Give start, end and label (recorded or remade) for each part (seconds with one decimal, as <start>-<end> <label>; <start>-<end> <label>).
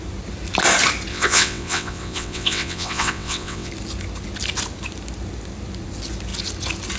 0.0-1.1 recorded; 1.1-3.7 remade; 3.7-7.0 recorded